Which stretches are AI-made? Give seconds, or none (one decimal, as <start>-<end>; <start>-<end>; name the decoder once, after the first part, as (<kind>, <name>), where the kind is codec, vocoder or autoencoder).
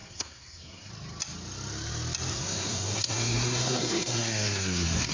0.0-0.9 (codec, SNAC); 2.3-5.1